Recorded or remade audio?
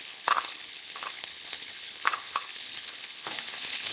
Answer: remade